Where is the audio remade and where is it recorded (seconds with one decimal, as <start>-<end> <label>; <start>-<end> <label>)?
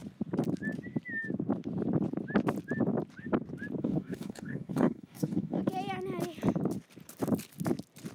0.0-3.8 recorded; 3.8-5.6 remade; 5.6-8.1 recorded